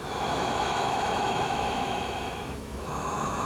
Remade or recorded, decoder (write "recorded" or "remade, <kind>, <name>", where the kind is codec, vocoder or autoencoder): remade, autoencoder, DAC-VAE